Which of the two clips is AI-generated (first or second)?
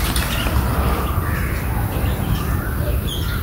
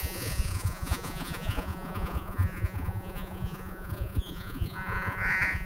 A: second